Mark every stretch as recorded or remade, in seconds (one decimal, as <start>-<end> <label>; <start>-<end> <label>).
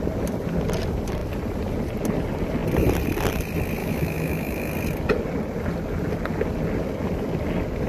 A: 0.0-3.8 recorded; 3.8-4.7 remade; 4.7-7.9 recorded